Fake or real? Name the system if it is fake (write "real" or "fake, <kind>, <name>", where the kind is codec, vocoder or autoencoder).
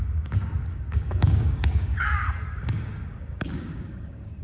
fake, codec, DAC